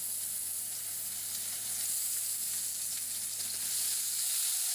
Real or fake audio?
real